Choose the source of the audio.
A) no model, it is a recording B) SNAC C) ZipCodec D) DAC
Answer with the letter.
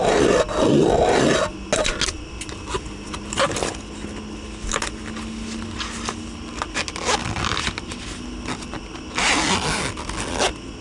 A